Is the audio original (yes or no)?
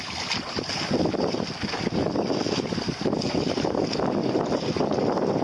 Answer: yes